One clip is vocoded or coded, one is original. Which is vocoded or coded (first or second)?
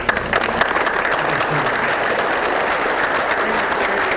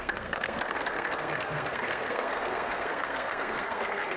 second